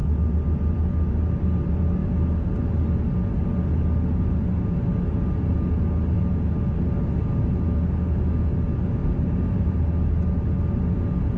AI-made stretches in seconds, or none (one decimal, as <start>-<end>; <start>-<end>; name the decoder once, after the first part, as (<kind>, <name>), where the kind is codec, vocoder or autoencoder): 9.0-9.8 (vocoder, BigVGAN v2)